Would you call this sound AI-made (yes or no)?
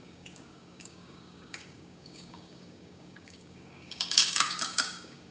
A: yes